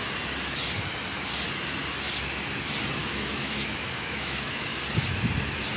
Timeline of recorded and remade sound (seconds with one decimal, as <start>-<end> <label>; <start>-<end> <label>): 0.0-3.0 recorded; 3.0-4.8 remade; 4.8-5.8 recorded